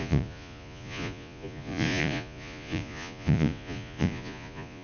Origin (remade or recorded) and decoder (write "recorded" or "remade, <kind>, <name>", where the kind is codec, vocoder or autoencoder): remade, vocoder, Vocos